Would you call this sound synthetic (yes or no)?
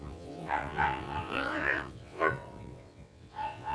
yes